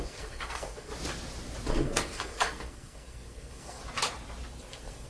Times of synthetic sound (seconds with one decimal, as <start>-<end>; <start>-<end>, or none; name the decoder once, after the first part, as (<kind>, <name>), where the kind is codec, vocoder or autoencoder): 0.0-0.9 (codec, SNAC); 1.7-3.8; 4.6-5.1